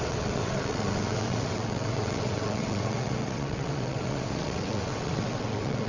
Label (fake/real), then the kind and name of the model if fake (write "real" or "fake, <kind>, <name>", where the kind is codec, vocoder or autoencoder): fake, vocoder, WaveNeXt